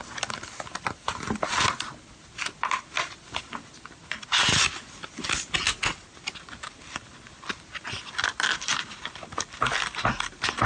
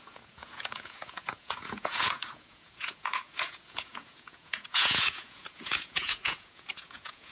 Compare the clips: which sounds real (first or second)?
first